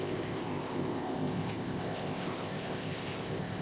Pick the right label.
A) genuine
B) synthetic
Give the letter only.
B